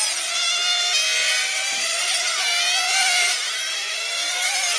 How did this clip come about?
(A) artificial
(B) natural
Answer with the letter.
B